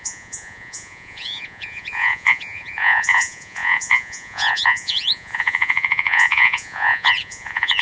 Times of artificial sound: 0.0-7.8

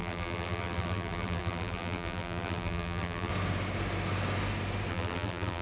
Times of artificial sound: 0.0-3.3; 4.9-5.6